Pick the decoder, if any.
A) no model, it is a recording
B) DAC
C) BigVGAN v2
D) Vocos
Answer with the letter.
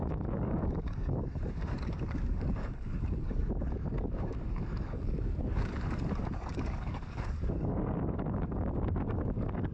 B